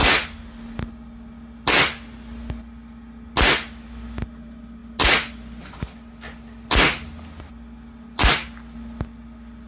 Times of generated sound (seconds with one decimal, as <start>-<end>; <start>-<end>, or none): none